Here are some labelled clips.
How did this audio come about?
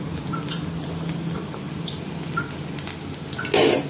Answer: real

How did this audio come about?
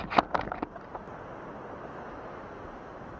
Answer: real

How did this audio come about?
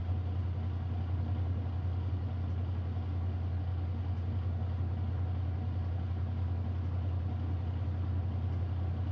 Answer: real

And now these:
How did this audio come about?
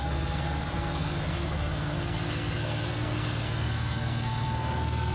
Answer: fake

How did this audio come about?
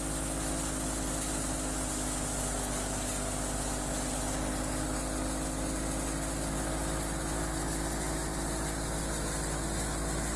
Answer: real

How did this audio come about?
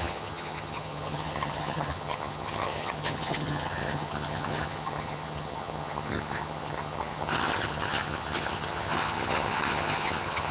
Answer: fake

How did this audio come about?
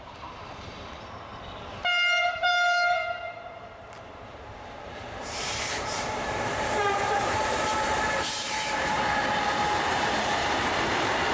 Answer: fake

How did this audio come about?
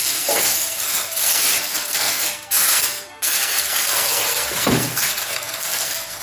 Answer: fake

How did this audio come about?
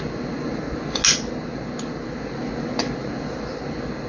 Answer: real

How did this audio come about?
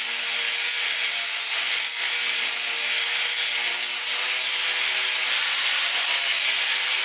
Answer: real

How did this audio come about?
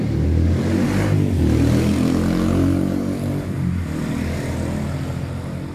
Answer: real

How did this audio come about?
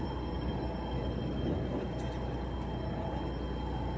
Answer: real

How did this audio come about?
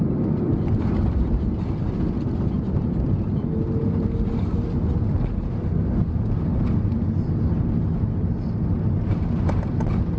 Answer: real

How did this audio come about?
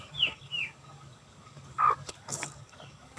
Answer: fake